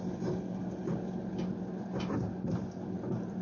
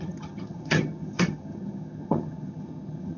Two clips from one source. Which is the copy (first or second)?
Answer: second